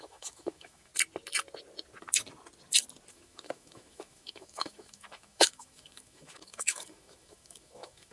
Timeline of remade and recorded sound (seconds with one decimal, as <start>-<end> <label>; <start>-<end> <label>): 0.0-0.9 remade; 0.9-3.1 recorded; 3.1-8.1 remade